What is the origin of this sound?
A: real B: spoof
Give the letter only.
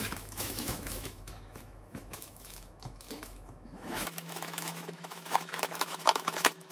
B